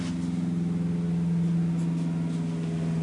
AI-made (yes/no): no